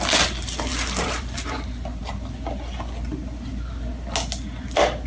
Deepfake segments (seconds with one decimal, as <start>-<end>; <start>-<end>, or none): 0.7-2.0